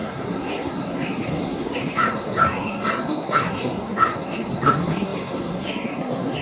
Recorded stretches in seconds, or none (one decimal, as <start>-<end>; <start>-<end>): none